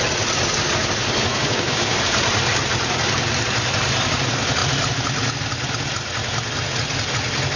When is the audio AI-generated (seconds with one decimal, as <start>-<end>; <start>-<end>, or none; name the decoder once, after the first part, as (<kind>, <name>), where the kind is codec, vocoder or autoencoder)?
1.3-2.0 (codec, DAC)